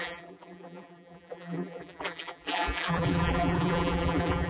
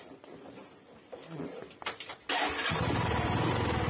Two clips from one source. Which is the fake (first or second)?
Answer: first